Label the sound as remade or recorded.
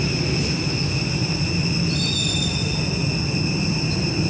recorded